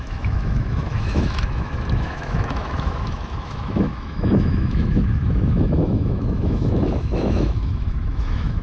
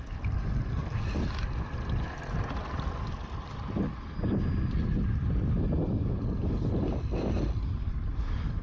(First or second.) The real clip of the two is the second